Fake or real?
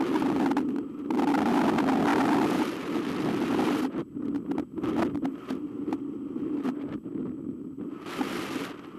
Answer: real